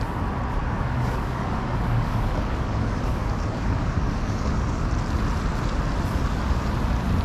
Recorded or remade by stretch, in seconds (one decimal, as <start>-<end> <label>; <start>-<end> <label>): 0.0-0.6 recorded; 0.6-4.9 remade; 4.9-7.2 recorded